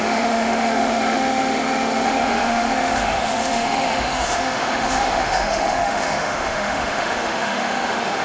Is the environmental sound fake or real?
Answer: fake